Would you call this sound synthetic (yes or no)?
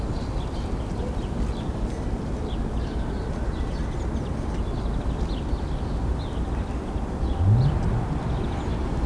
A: no